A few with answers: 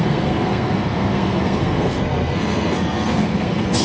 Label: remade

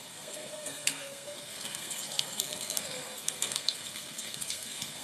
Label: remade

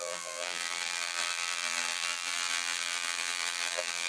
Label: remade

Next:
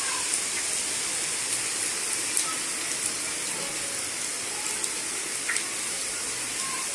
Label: recorded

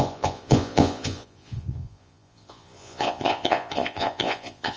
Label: remade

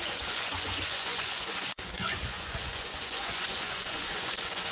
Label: remade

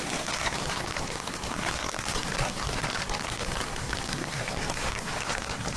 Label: remade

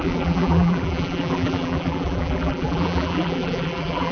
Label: remade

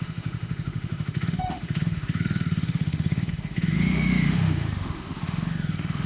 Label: remade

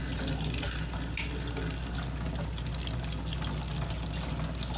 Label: recorded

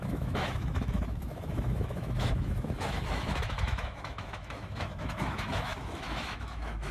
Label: remade